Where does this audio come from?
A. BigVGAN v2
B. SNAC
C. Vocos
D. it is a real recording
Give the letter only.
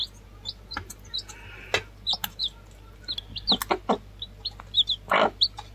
D